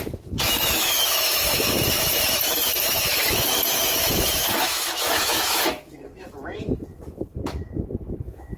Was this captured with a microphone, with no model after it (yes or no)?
no